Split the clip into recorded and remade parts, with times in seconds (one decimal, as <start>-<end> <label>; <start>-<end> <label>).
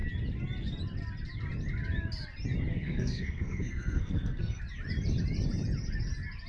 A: 0.0-2.7 recorded; 2.7-4.6 remade; 4.6-6.5 recorded